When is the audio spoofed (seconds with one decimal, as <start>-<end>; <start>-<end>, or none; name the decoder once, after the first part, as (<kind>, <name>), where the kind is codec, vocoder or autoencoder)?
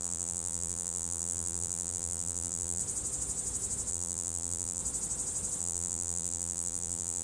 0.0-2.8 (vocoder, BigVGAN v2); 3.9-4.8; 5.6-7.2